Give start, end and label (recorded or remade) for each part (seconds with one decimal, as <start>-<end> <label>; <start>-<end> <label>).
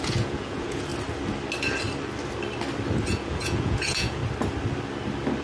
0.0-0.9 remade; 0.9-3.1 recorded; 3.1-4.2 remade; 4.2-5.4 recorded